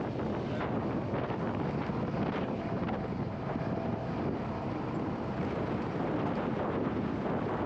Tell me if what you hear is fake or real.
real